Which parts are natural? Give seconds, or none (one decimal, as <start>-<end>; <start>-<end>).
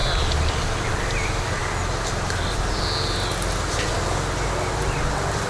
0.0-5.5